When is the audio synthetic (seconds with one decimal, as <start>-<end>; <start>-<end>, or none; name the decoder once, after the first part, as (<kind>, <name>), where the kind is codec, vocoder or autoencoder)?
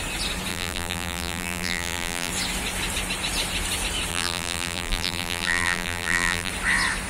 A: 0.5-2.3 (vocoder, BigVGAN v2); 4.1-6.5